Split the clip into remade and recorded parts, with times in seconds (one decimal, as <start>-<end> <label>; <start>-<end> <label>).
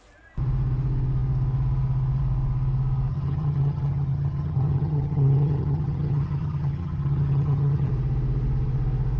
0.0-3.1 recorded; 3.1-7.9 remade; 7.9-9.2 recorded